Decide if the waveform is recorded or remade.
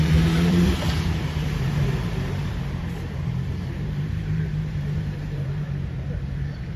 remade